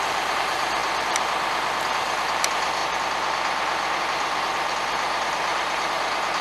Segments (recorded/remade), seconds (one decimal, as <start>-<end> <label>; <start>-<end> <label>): 0.0-0.8 remade; 0.8-1.9 recorded; 1.9-2.8 remade; 2.8-4.0 recorded; 4.0-6.4 remade